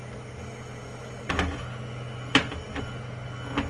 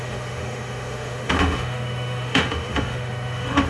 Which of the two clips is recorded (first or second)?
first